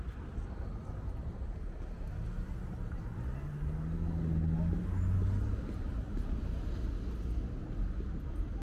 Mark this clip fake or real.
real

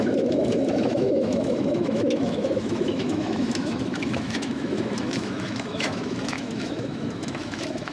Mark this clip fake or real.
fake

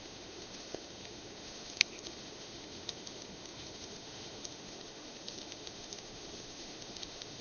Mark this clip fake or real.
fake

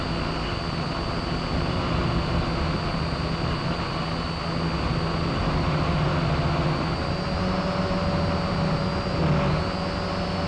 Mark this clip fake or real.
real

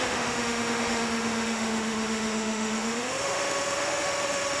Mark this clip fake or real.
fake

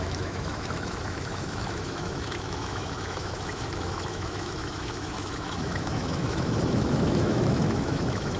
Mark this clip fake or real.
fake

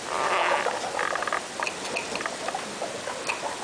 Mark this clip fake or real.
real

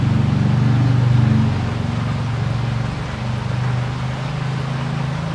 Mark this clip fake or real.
real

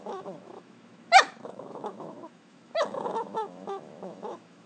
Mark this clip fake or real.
fake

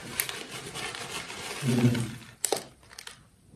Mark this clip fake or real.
real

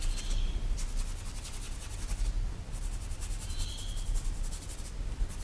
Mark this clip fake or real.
real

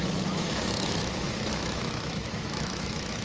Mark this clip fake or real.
fake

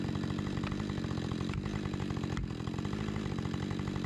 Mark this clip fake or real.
real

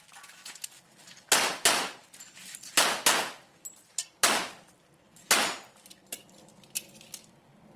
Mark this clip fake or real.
real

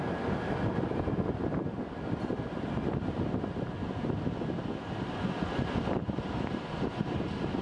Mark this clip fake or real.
real